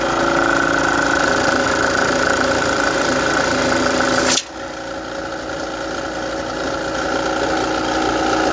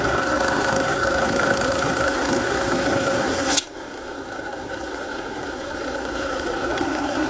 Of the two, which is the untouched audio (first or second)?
first